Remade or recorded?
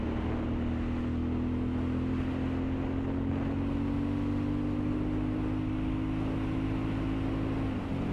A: recorded